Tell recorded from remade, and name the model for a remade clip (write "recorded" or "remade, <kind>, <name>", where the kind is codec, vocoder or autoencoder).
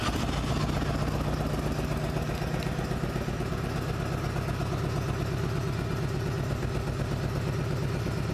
recorded